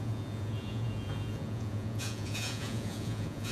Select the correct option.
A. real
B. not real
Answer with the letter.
B